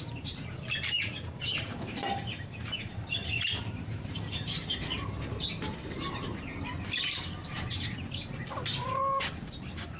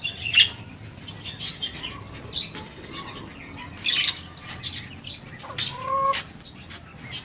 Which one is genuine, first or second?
second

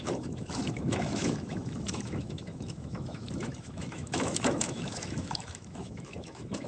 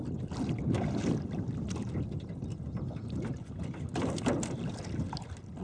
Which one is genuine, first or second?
second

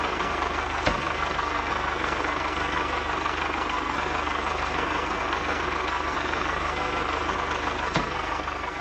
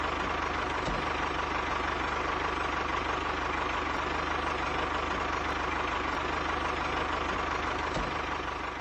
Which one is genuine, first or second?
second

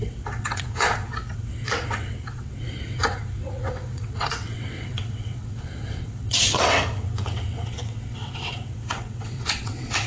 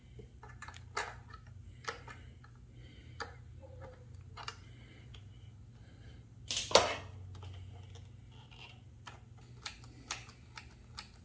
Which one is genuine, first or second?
second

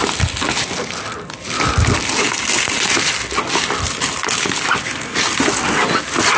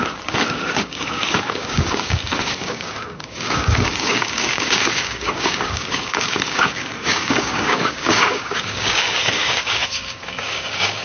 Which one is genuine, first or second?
first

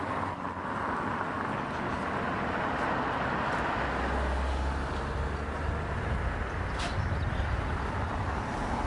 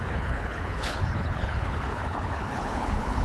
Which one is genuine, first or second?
first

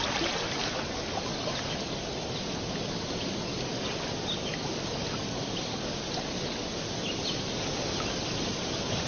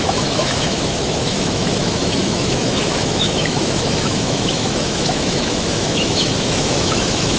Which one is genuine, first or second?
first